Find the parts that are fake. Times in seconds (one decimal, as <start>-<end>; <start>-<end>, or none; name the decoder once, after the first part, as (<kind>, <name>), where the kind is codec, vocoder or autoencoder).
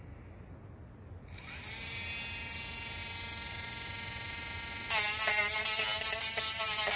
5.9-6.6 (vocoder, BigVGAN v2)